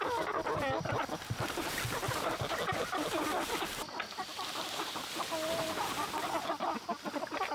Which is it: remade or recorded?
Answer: recorded